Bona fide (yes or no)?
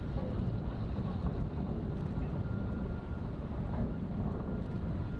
no